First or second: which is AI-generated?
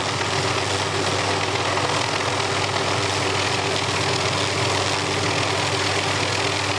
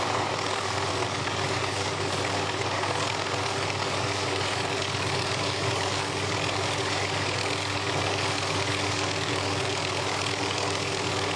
second